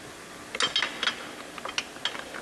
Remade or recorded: recorded